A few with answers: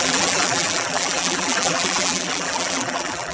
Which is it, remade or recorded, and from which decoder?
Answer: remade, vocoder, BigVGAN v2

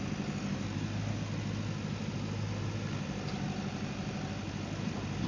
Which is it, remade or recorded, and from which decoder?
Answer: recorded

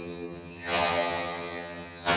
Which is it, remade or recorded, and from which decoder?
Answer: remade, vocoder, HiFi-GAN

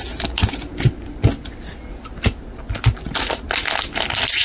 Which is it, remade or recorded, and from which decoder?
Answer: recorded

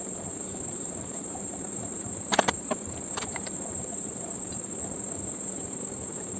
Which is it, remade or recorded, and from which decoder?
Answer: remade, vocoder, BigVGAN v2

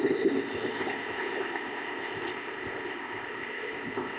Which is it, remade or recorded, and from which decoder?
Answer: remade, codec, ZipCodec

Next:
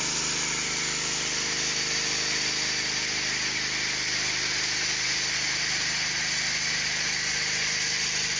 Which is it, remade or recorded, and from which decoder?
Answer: recorded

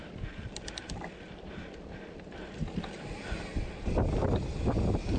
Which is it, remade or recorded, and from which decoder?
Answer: recorded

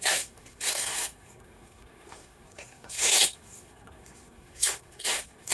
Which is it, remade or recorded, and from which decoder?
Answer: remade, codec, SNAC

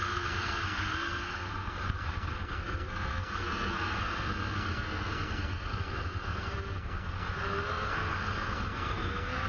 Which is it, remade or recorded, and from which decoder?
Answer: remade, codec, SNAC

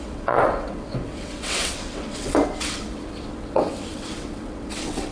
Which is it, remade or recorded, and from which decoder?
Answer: remade, vocoder, WaveNeXt